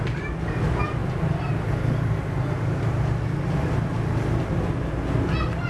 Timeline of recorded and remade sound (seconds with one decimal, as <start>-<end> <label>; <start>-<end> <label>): 0.0-5.7 recorded